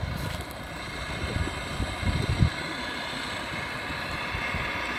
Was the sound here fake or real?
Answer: real